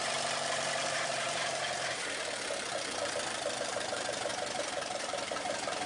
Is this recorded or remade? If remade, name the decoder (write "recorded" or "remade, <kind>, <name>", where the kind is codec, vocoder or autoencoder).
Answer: remade, vocoder, BigVGAN v2